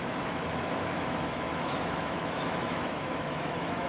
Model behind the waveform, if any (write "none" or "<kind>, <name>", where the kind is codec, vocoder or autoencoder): autoencoder, DAC-VAE